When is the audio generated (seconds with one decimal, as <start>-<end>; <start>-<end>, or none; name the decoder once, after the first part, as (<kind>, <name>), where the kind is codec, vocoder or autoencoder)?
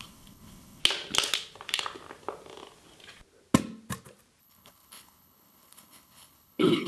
0.0-0.8 (codec, HILCodec); 4.4-6.9